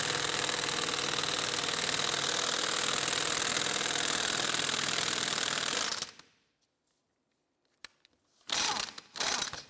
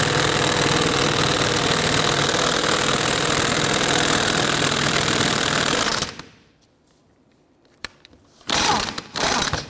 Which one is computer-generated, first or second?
second